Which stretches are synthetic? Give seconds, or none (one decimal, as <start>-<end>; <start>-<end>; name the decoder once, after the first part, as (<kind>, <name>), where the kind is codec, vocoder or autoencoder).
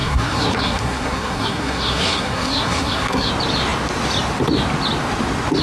0.0-3.3 (codec, SNAC)